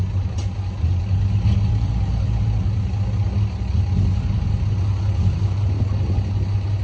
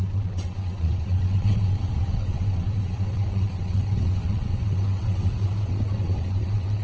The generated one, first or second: second